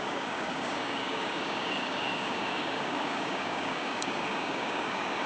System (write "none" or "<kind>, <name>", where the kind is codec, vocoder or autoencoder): codec, DAC